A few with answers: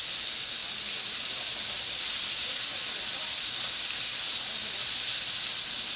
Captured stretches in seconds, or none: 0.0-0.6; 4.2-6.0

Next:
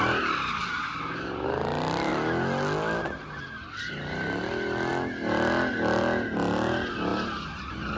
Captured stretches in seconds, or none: 0.0-7.1

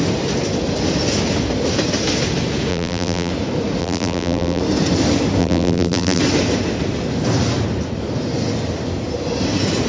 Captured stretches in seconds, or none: 0.0-2.7; 3.3-3.8; 4.6-5.4; 6.2-9.9

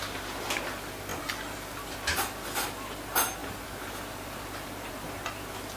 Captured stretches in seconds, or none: 0.0-5.8